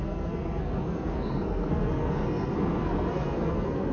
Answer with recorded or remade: remade